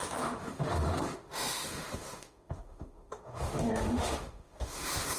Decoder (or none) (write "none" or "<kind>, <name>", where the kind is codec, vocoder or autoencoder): autoencoder, DAC-VAE